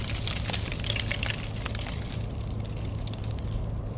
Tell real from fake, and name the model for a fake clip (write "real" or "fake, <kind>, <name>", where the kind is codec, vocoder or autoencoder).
real